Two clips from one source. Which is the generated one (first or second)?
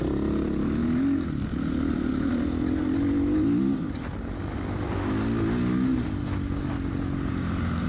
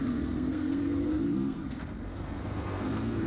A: second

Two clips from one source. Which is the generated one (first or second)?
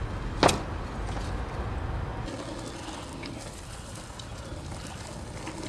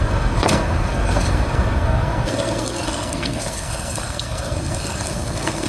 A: second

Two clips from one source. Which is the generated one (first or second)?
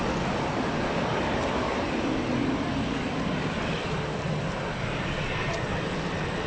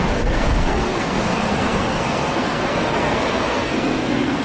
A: second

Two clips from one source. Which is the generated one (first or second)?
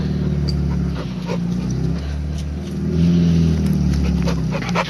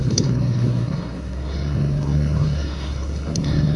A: second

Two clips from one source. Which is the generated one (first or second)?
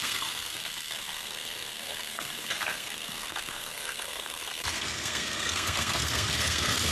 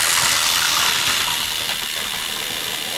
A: first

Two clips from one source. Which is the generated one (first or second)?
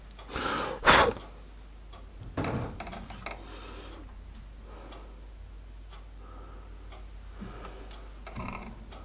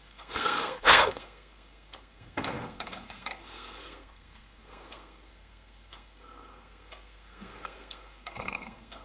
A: second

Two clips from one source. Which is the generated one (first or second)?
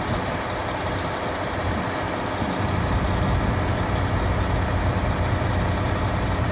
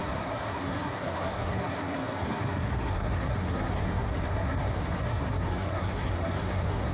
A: second